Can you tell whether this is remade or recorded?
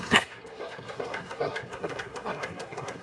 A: remade